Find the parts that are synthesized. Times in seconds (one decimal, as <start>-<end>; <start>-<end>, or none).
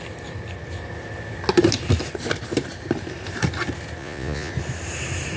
4.0-4.5